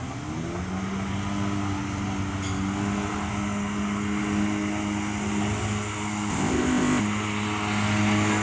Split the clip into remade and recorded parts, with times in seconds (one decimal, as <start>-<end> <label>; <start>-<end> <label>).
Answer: 0.0-6.3 recorded; 6.3-7.0 remade; 7.0-8.4 recorded